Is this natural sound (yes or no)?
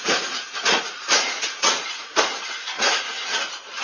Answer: no